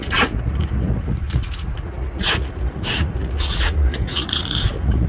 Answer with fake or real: fake